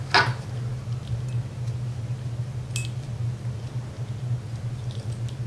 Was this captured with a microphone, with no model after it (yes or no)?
yes